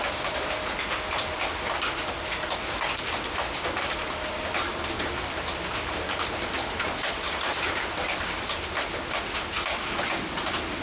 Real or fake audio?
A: real